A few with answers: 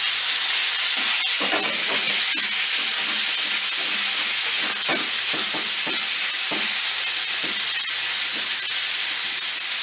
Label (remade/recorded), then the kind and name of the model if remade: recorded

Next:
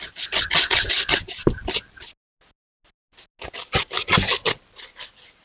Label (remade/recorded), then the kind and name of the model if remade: recorded